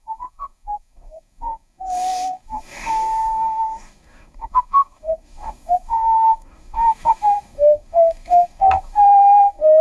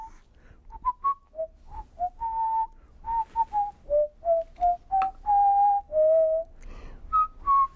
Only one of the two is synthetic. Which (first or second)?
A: first